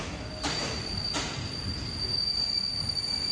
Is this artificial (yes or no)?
no